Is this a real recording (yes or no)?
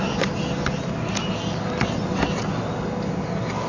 yes